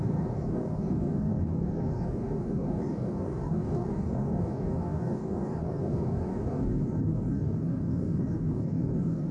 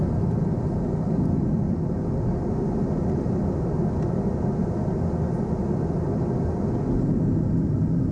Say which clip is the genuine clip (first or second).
second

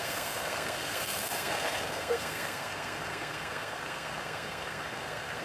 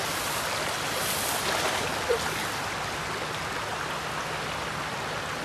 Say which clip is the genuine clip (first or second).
second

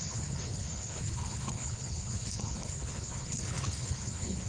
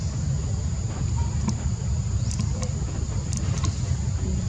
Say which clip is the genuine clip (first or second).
second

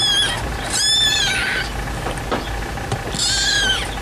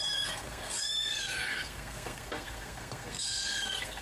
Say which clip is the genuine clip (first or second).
first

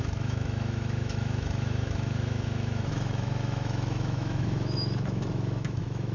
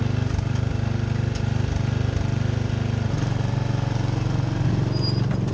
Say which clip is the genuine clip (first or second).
second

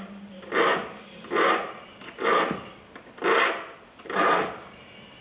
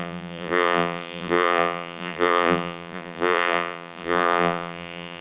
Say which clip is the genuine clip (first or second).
first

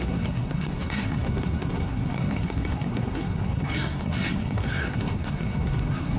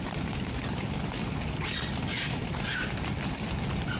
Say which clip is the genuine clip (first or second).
second